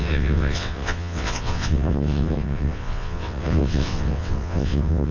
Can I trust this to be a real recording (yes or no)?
no